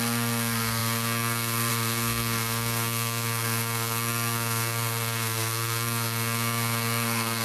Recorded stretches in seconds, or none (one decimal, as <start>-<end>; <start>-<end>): none